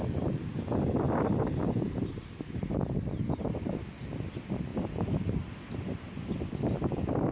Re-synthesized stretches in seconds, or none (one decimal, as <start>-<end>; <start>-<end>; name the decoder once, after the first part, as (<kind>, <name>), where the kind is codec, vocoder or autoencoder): none